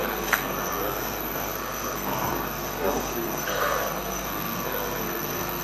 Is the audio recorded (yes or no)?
no